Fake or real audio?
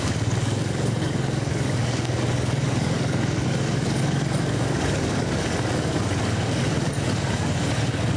fake